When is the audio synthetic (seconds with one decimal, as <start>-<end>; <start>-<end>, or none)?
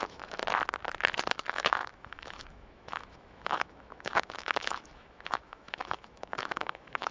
0.0-0.4; 1.3-7.1